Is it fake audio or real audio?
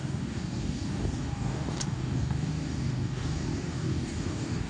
fake